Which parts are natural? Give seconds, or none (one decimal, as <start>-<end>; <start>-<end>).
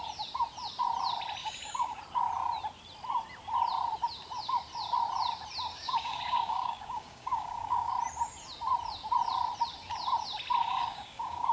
0.0-1.4; 2.0-5.7; 7.9-10.6